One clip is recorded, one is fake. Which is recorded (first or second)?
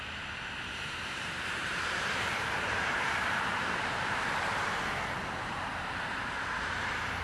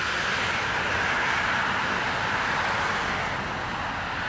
second